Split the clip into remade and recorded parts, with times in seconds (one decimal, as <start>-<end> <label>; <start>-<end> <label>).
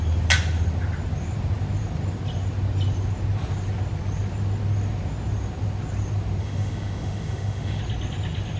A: 0.0-6.4 recorded; 6.4-7.8 remade; 7.8-8.6 recorded